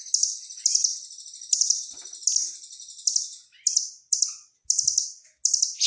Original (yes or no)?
yes